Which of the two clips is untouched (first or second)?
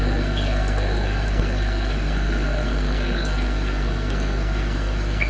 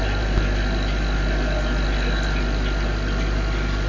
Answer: second